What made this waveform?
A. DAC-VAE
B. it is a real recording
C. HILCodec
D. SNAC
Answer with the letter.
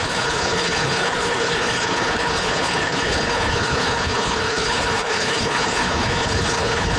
C